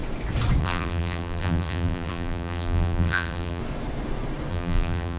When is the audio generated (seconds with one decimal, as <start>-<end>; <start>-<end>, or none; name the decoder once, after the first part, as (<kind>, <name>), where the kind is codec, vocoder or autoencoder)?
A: 0.6-3.6 (vocoder, BigVGAN v2); 4.5-5.2